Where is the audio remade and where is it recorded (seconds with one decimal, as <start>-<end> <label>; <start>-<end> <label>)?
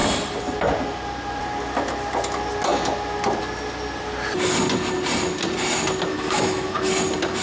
0.0-6.1 recorded; 6.1-6.9 remade; 6.9-7.4 recorded